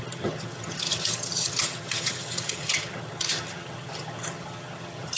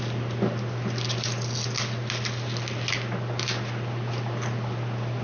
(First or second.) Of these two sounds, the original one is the second